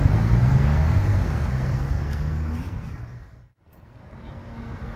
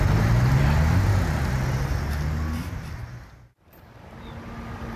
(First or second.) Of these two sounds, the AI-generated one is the first